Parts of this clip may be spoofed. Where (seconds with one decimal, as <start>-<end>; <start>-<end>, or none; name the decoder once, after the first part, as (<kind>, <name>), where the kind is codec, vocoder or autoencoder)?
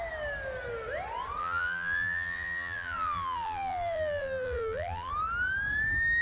1.4-5.1 (vocoder, BigVGAN v2)